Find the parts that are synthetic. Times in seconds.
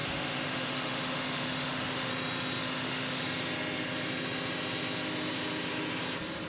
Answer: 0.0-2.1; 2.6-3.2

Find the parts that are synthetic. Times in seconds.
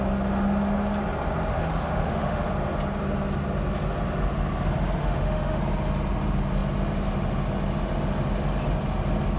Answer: 1.5-2.5; 5.0-5.6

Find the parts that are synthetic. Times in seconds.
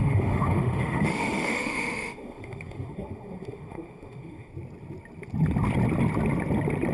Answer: 0.0-4.5